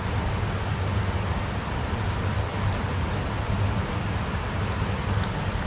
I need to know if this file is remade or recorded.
recorded